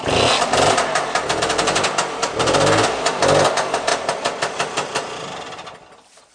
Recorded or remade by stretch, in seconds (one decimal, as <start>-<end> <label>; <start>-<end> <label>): 0.0-6.3 recorded